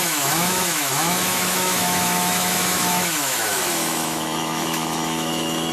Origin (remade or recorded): remade